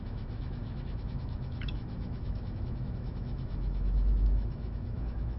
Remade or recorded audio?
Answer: remade